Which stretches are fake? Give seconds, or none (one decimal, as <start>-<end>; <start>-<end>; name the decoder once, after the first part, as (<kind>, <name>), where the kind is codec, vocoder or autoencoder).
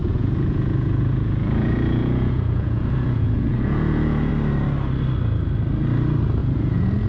0.0-4.3 (vocoder, Vocos); 6.4-7.1